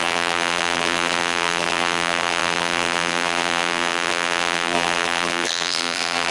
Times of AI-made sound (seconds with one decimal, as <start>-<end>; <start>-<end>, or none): 0.0-6.3